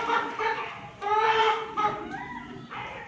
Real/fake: fake